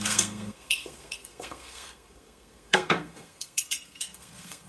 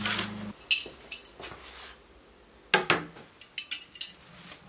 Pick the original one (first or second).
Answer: second